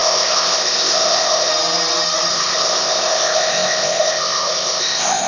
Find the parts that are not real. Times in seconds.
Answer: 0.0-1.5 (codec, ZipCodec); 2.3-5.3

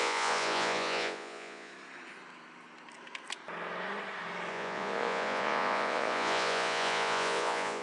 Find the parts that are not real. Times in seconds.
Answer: 0.0-1.7 (vocoder, Vocos); 4.5-7.8